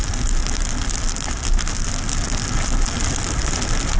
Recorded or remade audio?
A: recorded